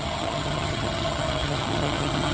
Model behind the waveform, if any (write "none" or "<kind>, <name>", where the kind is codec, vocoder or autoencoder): vocoder, HiFi-GAN